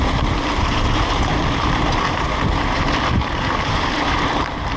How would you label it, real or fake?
fake